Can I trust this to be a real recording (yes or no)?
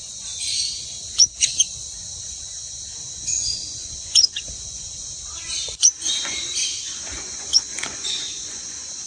no